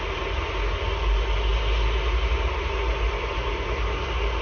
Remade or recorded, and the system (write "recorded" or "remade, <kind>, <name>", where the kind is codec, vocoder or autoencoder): recorded